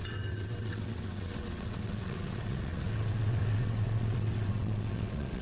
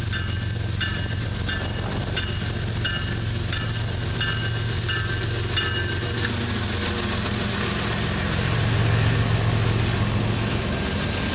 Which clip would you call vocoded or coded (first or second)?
first